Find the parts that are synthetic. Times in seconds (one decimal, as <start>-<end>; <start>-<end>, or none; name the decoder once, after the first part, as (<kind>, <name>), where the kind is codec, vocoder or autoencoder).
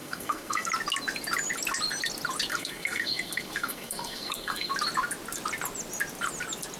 0.0-0.7 (codec, SNAC); 2.5-4.7